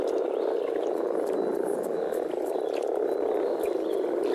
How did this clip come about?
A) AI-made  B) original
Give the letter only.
B